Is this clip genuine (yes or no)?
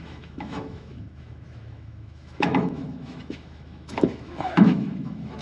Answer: no